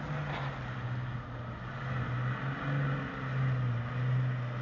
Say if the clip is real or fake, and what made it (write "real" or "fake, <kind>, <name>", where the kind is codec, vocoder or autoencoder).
real